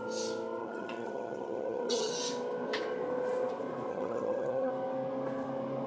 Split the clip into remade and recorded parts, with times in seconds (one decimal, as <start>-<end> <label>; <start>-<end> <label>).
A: 0.0-0.6 recorded; 0.6-2.1 remade; 2.1-3.9 recorded; 3.9-4.7 remade; 4.7-5.9 recorded